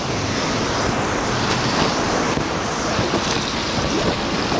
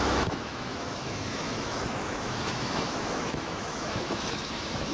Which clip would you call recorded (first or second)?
first